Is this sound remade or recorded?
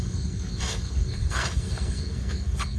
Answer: remade